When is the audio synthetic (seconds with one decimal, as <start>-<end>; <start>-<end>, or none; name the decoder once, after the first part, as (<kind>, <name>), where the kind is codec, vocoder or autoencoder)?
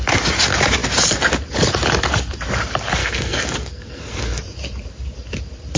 3.0-4.4 (codec, SNAC)